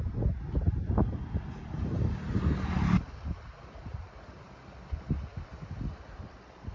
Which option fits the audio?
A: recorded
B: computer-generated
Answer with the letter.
A